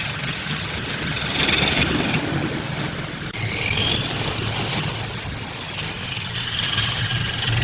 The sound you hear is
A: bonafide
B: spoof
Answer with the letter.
A